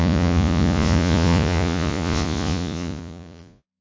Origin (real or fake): fake